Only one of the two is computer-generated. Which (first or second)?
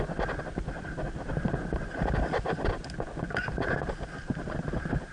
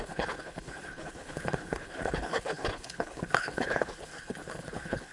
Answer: second